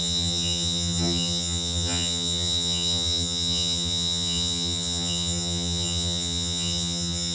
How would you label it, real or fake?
fake